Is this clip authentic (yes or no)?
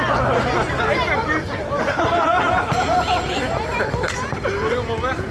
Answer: yes